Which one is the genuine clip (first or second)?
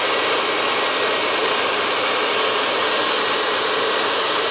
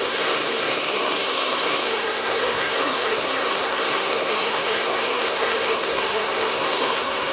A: first